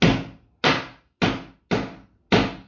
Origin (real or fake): real